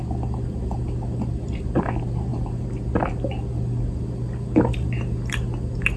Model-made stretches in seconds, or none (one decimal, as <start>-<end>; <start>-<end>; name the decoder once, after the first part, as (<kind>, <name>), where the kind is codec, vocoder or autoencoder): none